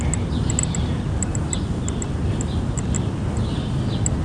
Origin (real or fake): real